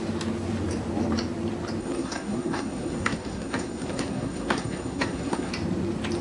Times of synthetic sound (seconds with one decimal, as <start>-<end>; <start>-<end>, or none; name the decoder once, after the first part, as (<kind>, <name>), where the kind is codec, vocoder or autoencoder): 1.8-5.5 (codec, SNAC)